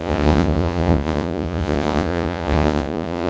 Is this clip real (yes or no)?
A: no